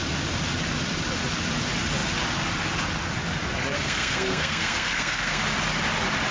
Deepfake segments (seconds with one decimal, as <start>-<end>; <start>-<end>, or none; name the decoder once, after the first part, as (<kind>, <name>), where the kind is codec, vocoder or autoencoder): 3.7-5.4 (codec, SNAC)